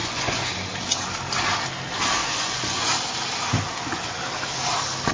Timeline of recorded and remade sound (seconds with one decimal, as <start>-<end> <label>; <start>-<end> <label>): 0.0-0.5 remade; 0.5-2.2 recorded; 2.2-2.9 remade; 2.9-5.1 recorded